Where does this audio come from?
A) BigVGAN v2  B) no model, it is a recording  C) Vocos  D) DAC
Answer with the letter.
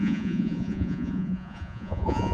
C